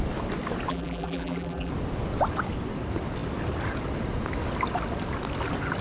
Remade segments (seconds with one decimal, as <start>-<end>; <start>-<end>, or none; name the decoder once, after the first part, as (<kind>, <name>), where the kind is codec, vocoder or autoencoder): 0.7-1.7 (vocoder, BigVGAN v2)